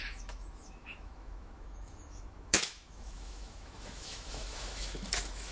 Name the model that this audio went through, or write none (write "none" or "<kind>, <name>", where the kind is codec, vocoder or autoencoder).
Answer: autoencoder, DAC-VAE